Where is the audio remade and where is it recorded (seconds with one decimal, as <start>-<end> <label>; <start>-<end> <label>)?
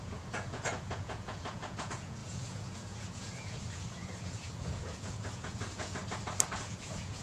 0.0-6.0 remade; 6.0-6.6 recorded; 6.6-7.2 remade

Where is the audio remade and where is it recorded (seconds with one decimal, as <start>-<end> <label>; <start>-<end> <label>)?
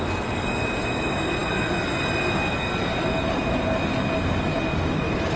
0.0-5.4 recorded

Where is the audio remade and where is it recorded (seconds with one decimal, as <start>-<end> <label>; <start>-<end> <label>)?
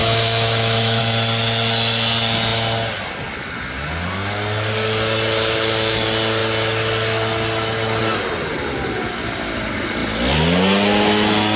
0.0-1.0 remade; 1.0-11.6 recorded